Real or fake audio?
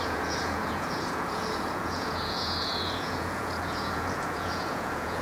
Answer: fake